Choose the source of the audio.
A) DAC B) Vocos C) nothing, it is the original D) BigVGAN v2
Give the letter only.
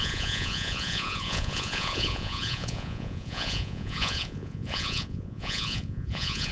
B